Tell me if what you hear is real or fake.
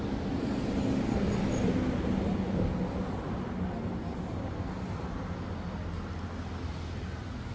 real